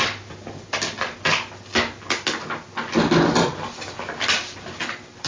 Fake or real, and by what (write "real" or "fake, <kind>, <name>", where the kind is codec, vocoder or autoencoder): real